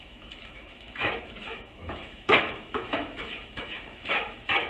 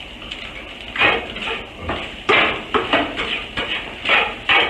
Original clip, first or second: second